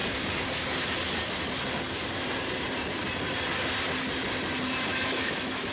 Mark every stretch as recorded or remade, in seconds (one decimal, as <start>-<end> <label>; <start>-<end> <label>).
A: 0.0-4.9 recorded; 4.9-5.7 remade

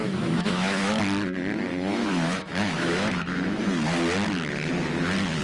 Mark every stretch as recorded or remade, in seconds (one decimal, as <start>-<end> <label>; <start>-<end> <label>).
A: 0.0-1.0 remade; 1.0-1.7 recorded; 1.7-3.6 remade; 3.6-5.4 recorded

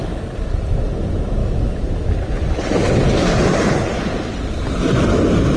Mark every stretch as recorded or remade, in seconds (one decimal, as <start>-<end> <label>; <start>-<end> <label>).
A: 0.0-1.4 recorded; 1.4-2.1 remade; 2.1-5.6 recorded

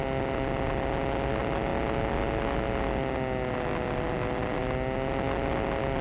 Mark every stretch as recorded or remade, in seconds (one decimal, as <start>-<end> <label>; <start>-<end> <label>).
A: 0.0-6.0 recorded

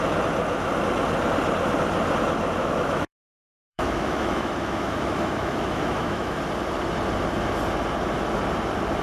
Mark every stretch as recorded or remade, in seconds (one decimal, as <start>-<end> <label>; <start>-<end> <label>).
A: 0.0-2.6 recorded; 2.6-6.4 remade; 6.4-9.0 recorded

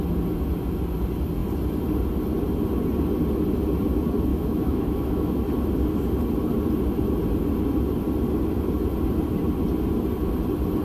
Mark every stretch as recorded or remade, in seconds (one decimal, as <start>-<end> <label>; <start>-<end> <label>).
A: 0.0-4.3 recorded; 4.3-5.4 remade; 5.4-10.8 recorded